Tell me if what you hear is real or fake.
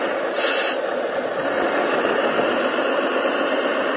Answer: real